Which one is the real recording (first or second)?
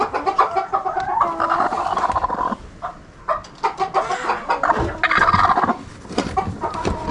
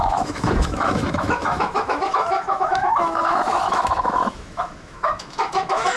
first